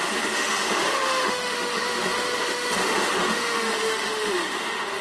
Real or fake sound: fake